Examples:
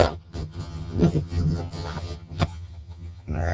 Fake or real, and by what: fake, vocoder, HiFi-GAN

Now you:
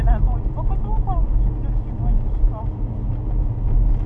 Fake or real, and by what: real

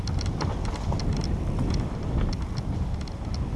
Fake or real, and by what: real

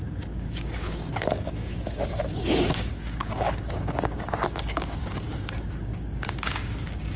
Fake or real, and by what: fake, codec, DAC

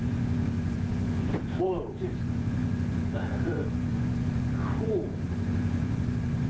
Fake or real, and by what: fake, vocoder, Vocos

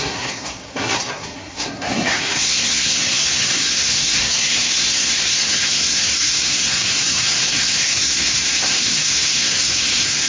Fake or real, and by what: fake, codec, SNAC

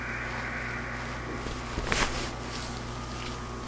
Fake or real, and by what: real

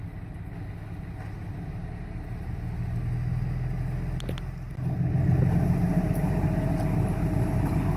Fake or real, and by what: real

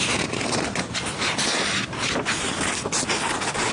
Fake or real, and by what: real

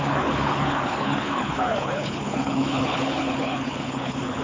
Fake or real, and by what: fake, codec, HILCodec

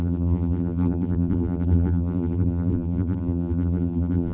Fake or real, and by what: fake, vocoder, BigVGAN v2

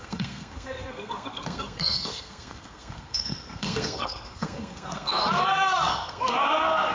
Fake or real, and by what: fake, codec, SNAC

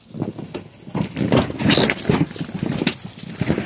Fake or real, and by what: real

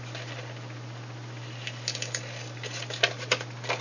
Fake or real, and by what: real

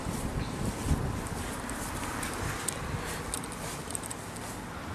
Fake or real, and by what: real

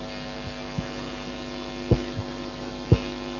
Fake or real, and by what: real